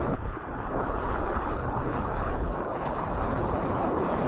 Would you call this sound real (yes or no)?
no